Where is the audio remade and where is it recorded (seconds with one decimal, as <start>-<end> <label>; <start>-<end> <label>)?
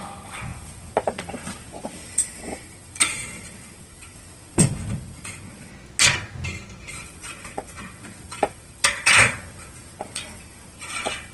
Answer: 0.0-5.7 remade; 5.7-6.9 recorded; 6.9-11.3 remade